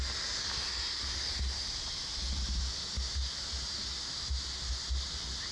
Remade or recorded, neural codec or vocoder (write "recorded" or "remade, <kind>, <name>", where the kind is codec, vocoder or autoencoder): recorded